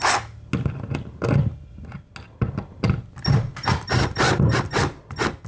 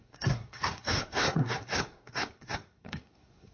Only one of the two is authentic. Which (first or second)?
first